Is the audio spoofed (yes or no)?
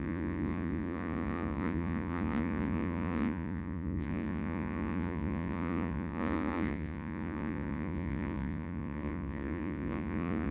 yes